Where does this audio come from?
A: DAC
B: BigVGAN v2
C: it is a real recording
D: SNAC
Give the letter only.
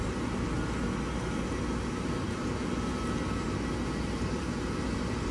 C